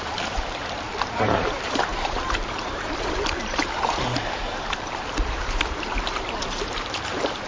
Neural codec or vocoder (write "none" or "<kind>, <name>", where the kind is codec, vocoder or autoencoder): vocoder, BigVGAN v2